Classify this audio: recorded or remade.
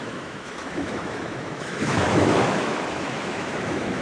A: remade